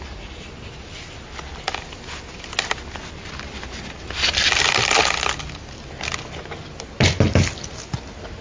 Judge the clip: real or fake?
real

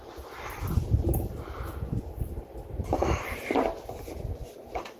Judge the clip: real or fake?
real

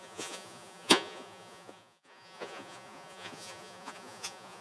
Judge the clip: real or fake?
fake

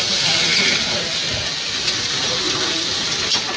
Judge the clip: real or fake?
fake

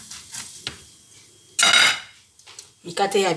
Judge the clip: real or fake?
real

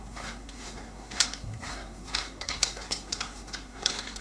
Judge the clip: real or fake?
fake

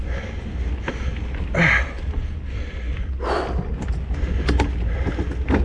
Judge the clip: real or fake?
real